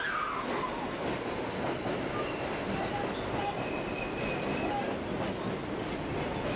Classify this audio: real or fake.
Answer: real